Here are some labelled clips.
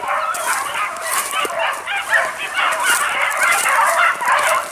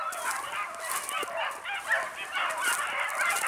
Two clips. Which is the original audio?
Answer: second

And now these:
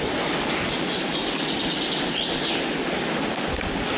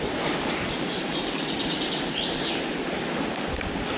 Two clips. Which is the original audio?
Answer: first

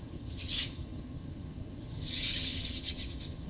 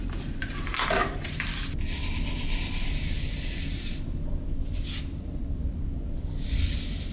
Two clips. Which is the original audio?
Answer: second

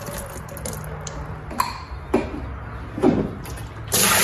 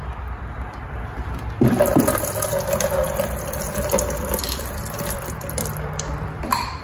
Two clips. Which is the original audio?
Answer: first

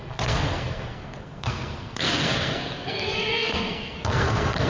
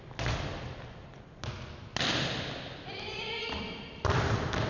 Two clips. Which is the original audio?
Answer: second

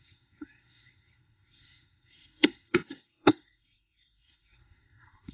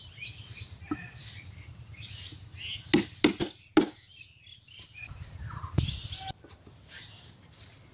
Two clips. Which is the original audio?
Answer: second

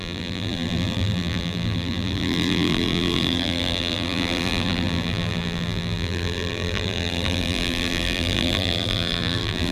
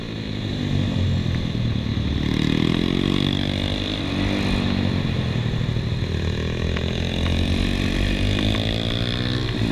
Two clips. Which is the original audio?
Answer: second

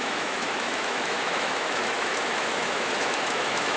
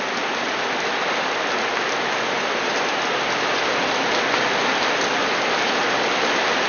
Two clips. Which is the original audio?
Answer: second